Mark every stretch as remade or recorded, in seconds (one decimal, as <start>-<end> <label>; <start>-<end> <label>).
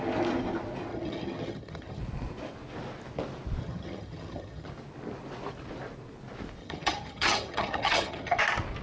0.0-0.9 recorded; 0.9-2.0 remade; 2.0-3.6 recorded; 3.6-4.7 remade; 4.7-6.6 recorded; 6.6-8.4 remade; 8.4-8.8 recorded